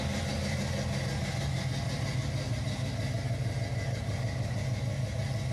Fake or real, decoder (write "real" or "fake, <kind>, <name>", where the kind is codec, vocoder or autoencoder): real